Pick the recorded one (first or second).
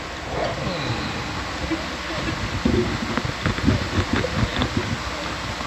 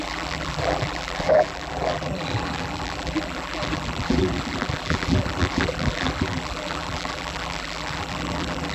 first